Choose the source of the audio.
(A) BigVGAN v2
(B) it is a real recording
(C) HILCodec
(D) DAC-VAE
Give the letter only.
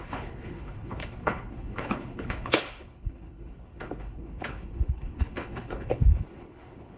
C